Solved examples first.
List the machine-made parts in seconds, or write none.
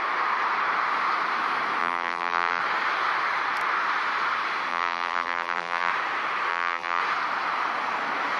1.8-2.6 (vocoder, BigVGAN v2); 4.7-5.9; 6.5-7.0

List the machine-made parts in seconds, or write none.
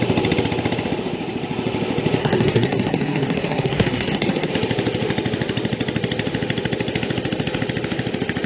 2.2-4.5 (codec, SNAC)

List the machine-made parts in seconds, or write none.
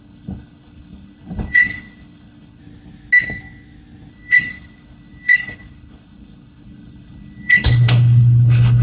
0.0-2.6 (codec, HILCodec); 4.1-8.8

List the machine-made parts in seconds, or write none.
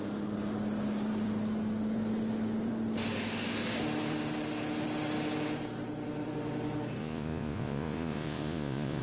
7.0-9.0 (vocoder, Vocos)